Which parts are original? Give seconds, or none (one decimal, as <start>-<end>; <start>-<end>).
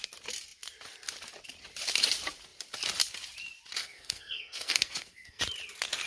0.0-3.8; 5.4-6.1